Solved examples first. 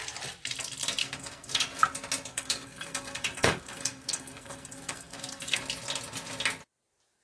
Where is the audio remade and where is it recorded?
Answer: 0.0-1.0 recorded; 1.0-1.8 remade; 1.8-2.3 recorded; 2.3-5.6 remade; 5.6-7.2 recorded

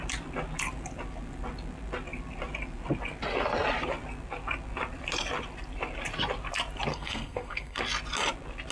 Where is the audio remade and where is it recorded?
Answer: 0.0-6.9 recorded; 6.9-7.8 remade; 7.8-8.7 recorded

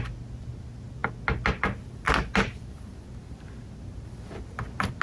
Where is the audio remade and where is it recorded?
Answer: 0.0-5.0 recorded

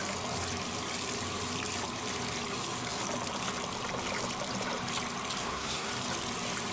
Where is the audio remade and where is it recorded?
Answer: 0.0-5.4 recorded; 5.4-5.9 remade; 5.9-6.7 recorded

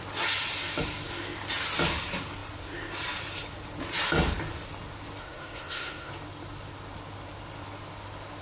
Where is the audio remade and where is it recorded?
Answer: 0.0-5.2 recorded; 5.2-6.1 remade; 6.1-8.4 recorded

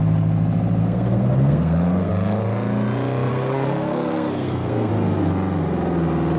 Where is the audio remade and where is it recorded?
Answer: 0.0-0.8 recorded; 0.8-2.1 remade; 2.1-3.3 recorded; 3.3-4.9 remade; 4.9-6.4 recorded